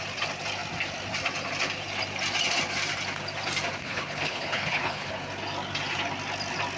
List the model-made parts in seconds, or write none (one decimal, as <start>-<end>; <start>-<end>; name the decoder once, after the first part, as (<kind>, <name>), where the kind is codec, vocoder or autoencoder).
3.8-5.1 (codec, HILCodec)